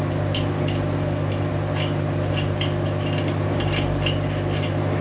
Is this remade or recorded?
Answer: recorded